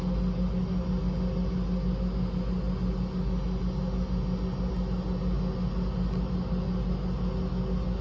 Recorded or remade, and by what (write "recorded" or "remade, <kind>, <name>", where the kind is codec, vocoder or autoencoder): recorded